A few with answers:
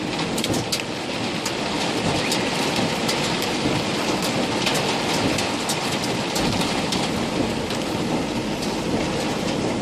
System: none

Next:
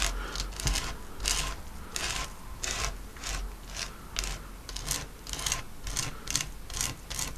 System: none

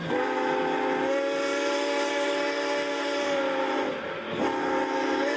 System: none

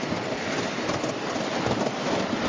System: none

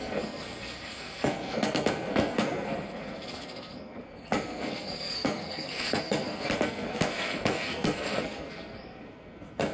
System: codec, SNAC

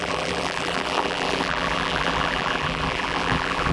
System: vocoder, BigVGAN v2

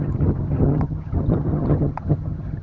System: vocoder, HiFi-GAN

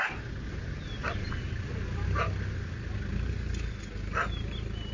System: none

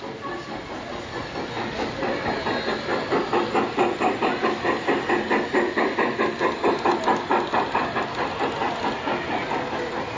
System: none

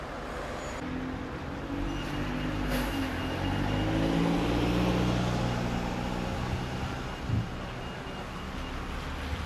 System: none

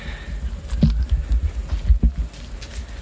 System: none